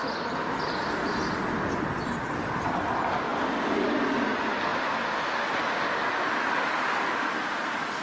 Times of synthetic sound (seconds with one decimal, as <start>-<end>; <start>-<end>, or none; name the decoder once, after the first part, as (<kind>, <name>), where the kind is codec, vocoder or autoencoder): none

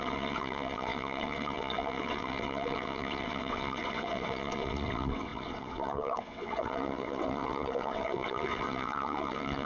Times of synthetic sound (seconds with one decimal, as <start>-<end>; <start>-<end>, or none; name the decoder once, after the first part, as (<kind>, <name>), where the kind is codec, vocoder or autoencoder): 0.0-9.7 (vocoder, WaveNeXt)

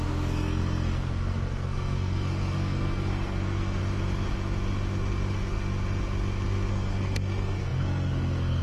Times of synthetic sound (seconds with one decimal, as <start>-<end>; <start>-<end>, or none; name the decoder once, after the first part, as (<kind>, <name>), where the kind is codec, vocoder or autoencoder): 0.0-3.8 (codec, SNAC); 6.7-8.6

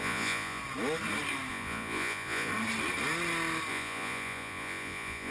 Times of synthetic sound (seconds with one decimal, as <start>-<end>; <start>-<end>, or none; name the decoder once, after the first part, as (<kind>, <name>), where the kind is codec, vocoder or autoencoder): 0.0-0.6 (vocoder, Vocos); 1.5-2.5; 3.7-5.3

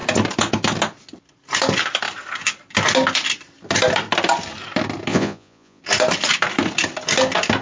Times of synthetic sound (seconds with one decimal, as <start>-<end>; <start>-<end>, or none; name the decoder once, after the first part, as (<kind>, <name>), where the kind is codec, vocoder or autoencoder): 5.1-5.8 (vocoder, Vocos)